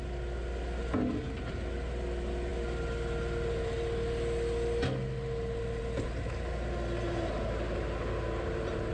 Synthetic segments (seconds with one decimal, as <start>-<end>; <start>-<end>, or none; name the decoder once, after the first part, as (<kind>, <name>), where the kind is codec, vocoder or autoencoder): none